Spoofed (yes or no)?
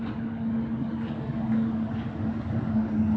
yes